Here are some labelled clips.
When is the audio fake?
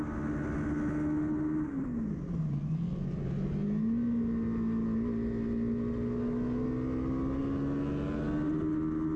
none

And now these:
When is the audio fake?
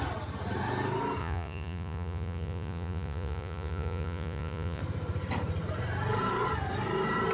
1.2-4.8 (vocoder, Vocos)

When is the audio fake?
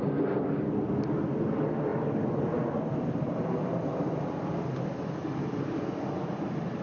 none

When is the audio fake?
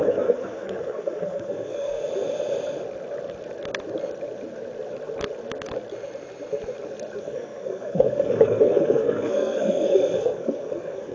0.0-2.0 (codec, SNAC); 7.2-11.1